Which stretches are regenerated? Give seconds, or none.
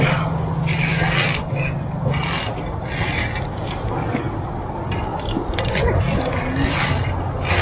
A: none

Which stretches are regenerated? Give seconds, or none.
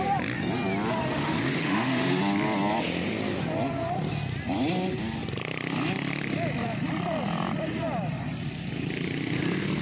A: 1.0-2.2 (autoencoder, DAC-VAE)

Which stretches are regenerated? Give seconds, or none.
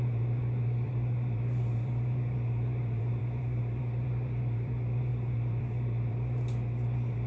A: 0.0-7.3 (vocoder, BigVGAN v2)